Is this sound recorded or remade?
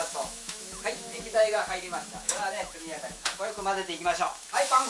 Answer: remade